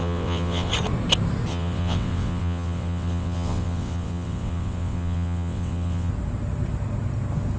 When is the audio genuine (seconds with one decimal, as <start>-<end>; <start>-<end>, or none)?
0.7-1.5; 6.1-7.6